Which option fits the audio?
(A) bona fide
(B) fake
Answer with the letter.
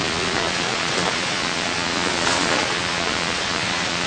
B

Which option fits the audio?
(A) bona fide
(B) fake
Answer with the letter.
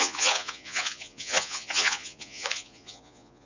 B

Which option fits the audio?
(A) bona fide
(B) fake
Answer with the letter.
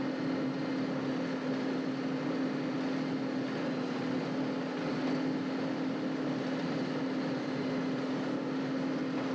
A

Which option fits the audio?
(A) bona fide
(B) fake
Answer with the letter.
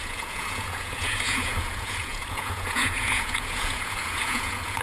B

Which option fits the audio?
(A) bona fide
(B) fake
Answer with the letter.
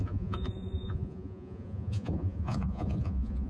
B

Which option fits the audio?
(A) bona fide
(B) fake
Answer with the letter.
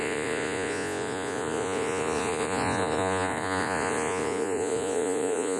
B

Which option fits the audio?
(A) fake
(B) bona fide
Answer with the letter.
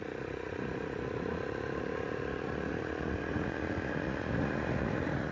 A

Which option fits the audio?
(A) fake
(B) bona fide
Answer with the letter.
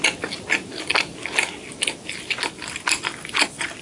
B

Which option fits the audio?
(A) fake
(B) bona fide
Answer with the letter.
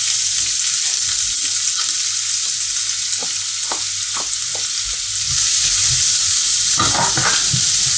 B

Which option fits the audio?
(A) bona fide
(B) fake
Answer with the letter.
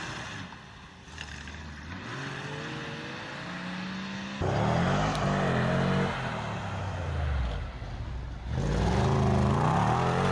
A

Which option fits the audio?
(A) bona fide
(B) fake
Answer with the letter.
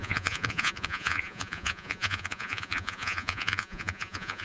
B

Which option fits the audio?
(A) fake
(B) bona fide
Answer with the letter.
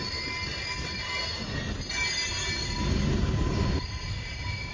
B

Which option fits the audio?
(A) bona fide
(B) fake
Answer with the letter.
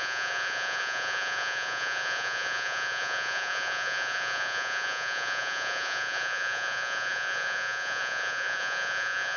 B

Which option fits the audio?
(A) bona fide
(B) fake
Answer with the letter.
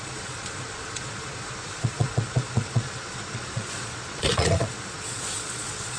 B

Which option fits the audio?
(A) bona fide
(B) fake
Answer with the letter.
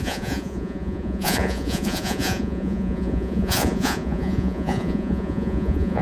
B